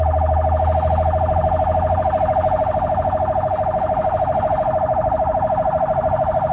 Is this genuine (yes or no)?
yes